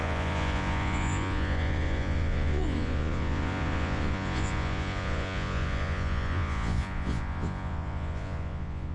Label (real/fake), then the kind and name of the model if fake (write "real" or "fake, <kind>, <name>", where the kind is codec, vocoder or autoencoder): fake, vocoder, Vocos